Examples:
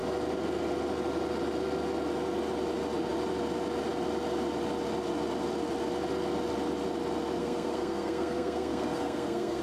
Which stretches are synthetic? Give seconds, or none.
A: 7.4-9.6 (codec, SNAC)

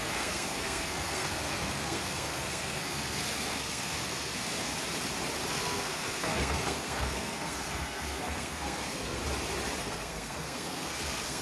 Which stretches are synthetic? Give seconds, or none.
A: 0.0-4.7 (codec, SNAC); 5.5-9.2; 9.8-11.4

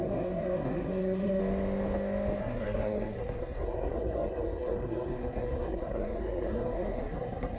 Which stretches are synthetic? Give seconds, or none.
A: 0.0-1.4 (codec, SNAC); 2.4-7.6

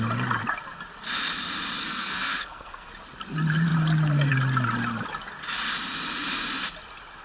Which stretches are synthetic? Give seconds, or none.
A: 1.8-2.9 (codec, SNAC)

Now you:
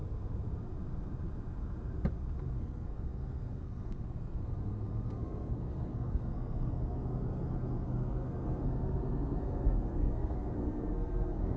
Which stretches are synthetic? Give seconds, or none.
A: 2.6-11.6 (codec, SNAC)

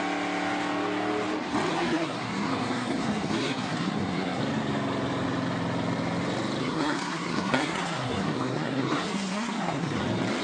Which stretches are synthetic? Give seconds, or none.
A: 1.7-4.4 (codec, SNAC); 6.6-10.0

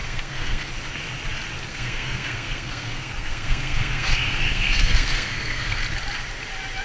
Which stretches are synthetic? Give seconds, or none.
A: 0.0-0.7 (codec, SNAC); 1.7-5.8

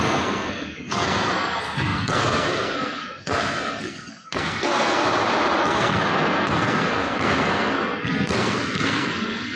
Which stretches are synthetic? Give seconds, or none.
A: 0.0-5.0 (codec, SNAC); 5.6-9.6